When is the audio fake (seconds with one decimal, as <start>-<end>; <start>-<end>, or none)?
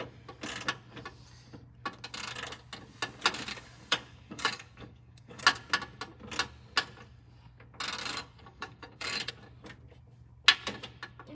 3.5-5.4; 8.0-9.3